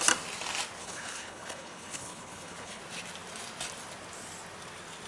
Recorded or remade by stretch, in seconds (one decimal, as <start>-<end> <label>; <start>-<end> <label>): 0.0-0.8 recorded; 0.8-2.8 remade; 2.8-5.1 recorded